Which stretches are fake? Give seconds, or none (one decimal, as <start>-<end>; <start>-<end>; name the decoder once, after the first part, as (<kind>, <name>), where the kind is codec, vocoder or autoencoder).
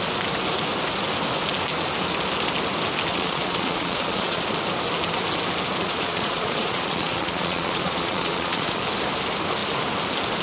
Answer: 3.1-4.4 (vocoder, Vocos); 5.8-8.8